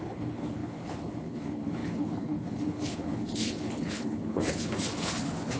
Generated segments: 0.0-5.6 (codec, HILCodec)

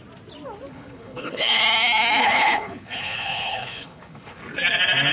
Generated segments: 0.7-1.6 (codec, HILCodec); 2.2-4.4

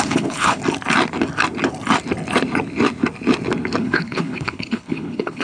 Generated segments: 0.0-0.6 (codec, HILCodec); 3.8-5.4

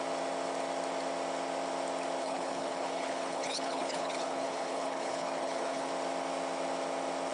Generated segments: 2.2-5.9 (codec, HILCodec)

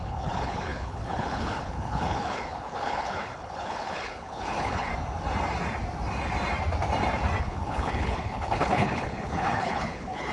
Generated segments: 0.0-4.9 (codec, HILCodec); 7.4-10.3